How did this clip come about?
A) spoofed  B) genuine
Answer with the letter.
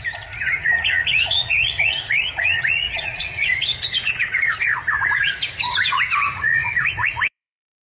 A